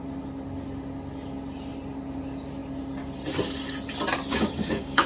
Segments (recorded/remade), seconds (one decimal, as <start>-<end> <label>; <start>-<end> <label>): 0.0-4.3 recorded; 4.3-5.1 remade